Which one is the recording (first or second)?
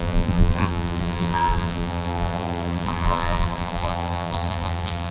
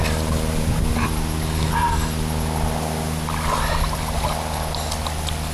second